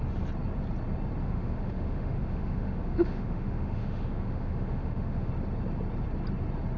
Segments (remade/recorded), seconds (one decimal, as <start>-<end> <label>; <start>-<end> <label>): 0.0-1.2 recorded; 1.2-5.3 remade; 5.3-6.8 recorded